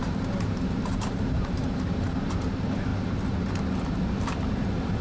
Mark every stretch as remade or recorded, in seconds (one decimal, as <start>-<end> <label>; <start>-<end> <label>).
0.0-2.9 remade; 2.9-4.5 recorded; 4.5-5.0 remade